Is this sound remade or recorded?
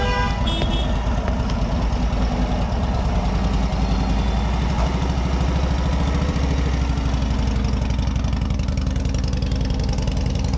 recorded